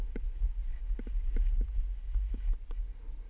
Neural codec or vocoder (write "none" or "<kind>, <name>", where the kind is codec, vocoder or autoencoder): none